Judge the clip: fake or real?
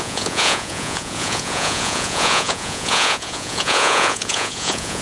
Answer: fake